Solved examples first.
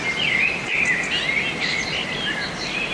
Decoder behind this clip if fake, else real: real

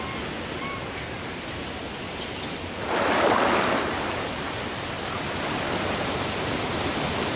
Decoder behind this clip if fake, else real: real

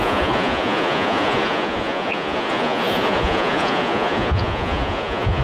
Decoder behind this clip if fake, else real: fake, vocoder, Vocos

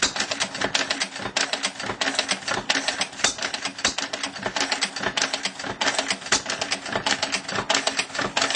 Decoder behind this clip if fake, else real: real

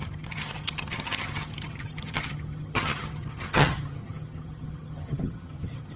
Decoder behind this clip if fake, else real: fake, vocoder, HiFi-GAN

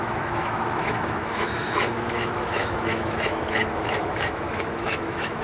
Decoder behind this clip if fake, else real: fake, autoencoder, DAC-VAE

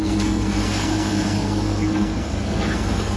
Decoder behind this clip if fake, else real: fake, codec, SNAC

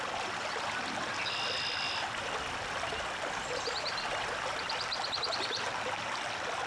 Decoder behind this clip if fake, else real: real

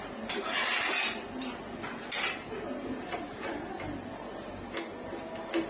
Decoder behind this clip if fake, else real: real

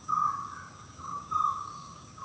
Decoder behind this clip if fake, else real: fake, codec, DAC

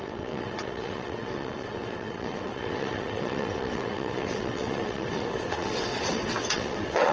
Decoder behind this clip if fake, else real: fake, vocoder, WaveNeXt